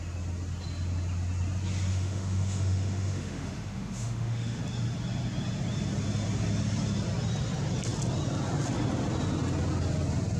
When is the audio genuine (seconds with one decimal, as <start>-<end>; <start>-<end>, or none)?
0.0-1.9; 4.6-10.4